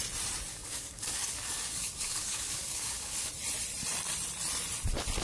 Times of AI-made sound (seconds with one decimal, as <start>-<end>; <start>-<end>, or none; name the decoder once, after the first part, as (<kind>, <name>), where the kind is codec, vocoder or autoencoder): 0.5-3.3 (codec, DAC)